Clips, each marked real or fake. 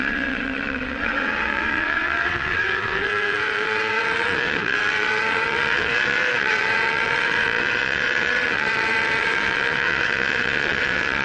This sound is fake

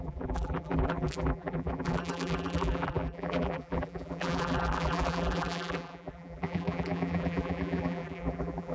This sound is fake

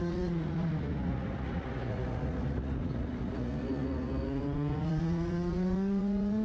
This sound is fake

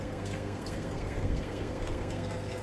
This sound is fake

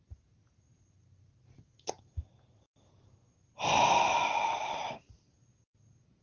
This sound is real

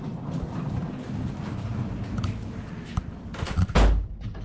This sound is real